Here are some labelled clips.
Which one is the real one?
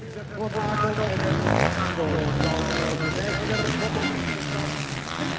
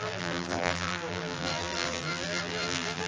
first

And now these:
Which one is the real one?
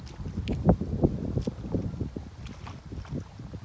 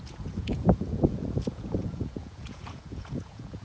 first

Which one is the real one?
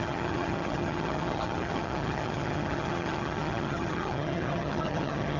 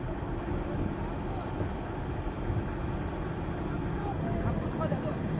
second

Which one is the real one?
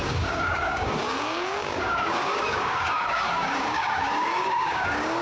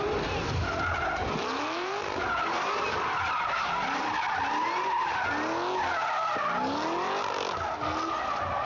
second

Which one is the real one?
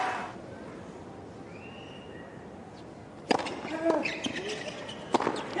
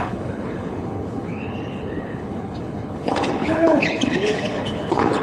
first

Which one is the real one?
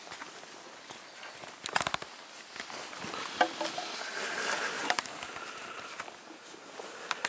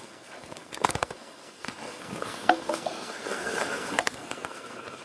first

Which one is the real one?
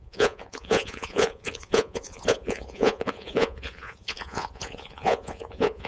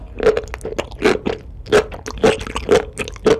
second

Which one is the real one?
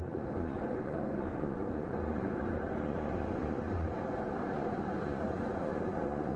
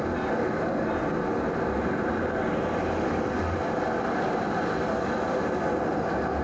second